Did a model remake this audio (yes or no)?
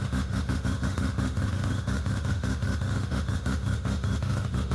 yes